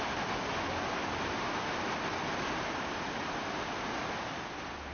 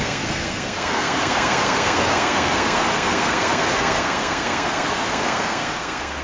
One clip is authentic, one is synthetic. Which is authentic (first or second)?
first